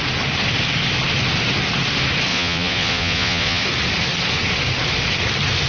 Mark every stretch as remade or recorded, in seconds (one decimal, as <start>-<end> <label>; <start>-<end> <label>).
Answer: 0.0-2.3 recorded; 2.3-3.6 remade; 3.6-5.7 recorded